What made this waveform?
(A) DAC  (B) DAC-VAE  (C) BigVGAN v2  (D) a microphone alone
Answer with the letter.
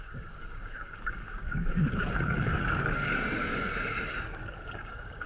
A